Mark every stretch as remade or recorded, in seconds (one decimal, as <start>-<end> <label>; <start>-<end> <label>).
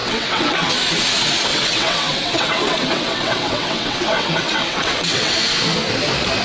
0.0-0.7 remade; 0.7-1.5 recorded; 1.5-5.3 remade; 5.3-6.4 recorded